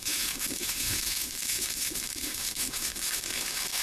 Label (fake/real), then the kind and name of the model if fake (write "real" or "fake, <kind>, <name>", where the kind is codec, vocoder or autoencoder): fake, autoencoder, DAC-VAE